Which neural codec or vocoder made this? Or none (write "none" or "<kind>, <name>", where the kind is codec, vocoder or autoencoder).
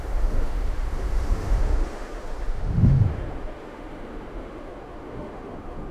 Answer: autoencoder, DAC-VAE